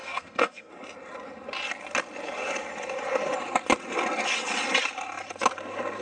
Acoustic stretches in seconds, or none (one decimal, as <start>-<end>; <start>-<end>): 0.7-6.0